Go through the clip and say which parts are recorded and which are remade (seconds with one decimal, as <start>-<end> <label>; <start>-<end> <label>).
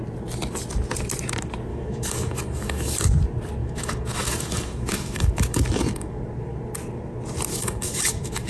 0.0-1.7 recorded; 1.7-3.0 remade; 3.0-3.6 recorded; 3.6-6.2 remade; 6.2-7.5 recorded; 7.5-8.5 remade